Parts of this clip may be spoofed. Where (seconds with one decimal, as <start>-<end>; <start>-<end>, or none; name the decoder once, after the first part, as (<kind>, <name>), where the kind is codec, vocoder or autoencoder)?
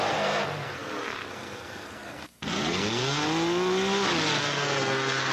0.0-3.2 (codec, SNAC); 4.4-5.3